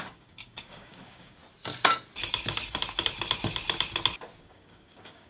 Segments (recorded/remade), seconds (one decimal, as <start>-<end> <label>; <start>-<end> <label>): 0.0-1.4 remade; 1.4-4.4 recorded; 4.4-5.3 remade